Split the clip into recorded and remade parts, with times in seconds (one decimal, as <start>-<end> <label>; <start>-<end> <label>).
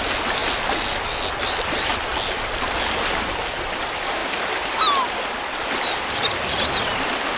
0.0-7.4 recorded